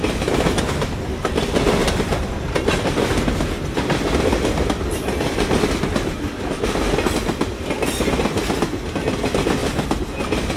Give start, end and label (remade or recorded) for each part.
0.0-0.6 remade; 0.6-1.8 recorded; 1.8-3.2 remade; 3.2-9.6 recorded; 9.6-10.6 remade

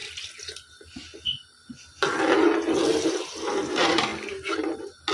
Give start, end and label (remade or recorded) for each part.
0.0-5.1 recorded